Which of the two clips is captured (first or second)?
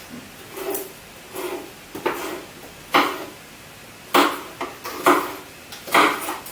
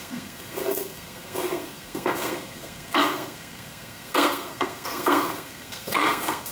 first